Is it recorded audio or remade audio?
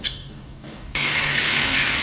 remade